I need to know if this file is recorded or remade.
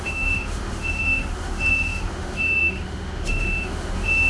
remade